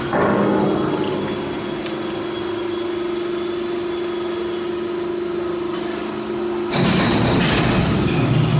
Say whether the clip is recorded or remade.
recorded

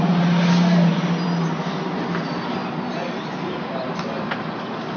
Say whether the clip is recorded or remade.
recorded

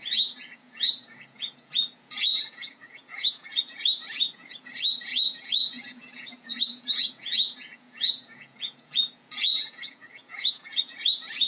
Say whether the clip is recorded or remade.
remade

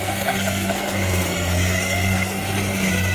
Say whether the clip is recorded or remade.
remade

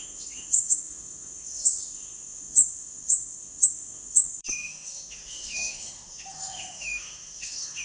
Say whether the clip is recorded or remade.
remade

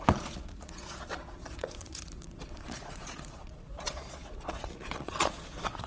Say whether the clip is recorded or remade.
remade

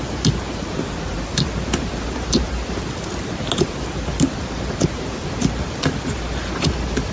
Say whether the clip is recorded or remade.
recorded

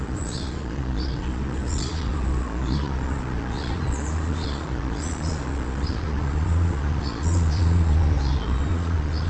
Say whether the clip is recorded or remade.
remade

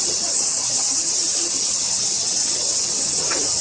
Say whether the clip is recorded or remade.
remade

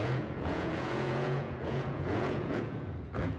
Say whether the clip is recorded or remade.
remade